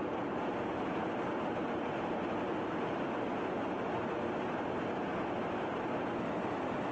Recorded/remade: recorded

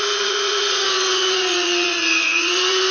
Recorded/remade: remade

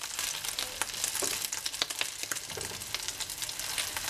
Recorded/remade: recorded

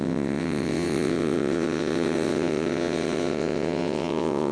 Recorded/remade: remade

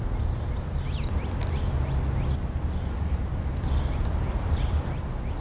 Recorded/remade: recorded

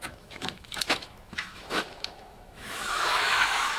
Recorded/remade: remade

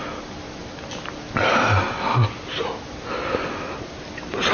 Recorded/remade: recorded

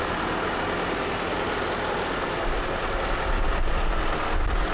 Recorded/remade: recorded